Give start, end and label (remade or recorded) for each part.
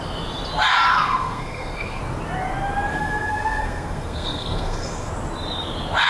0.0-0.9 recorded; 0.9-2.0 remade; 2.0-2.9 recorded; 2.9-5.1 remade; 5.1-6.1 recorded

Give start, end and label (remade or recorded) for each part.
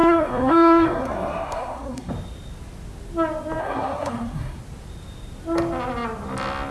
0.0-2.1 remade; 2.1-3.6 recorded; 3.6-4.6 remade; 4.6-6.7 recorded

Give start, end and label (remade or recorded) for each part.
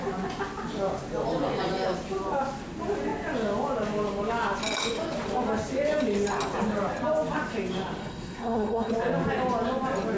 0.0-8.0 recorded; 8.0-8.9 remade; 8.9-10.2 recorded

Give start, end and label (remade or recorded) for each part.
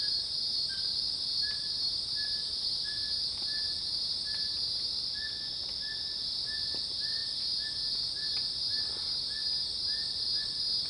0.0-10.9 recorded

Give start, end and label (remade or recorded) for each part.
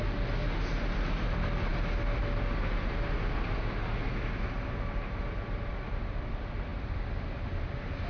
0.0-8.1 recorded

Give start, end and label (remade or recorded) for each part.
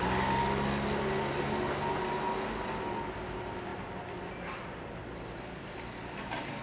0.0-6.6 recorded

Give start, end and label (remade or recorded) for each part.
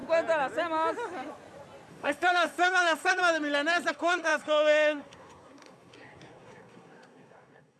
0.0-1.9 recorded; 1.9-3.2 remade; 3.2-3.9 recorded; 3.9-7.8 remade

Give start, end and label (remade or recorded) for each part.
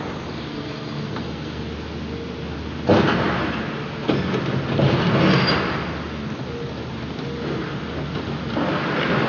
0.0-0.5 recorded; 0.5-1.6 remade; 1.6-9.3 recorded